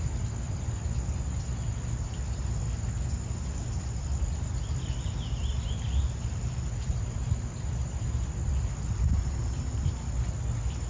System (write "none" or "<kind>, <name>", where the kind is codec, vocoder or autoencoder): none